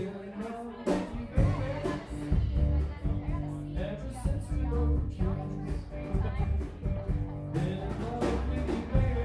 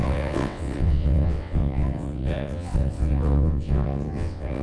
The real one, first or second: first